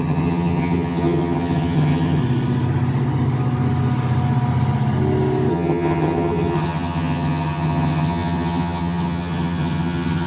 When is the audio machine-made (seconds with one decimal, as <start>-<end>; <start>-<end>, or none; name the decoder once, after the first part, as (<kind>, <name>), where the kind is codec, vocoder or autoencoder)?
0.0-2.2 (vocoder, HiFi-GAN); 5.5-10.3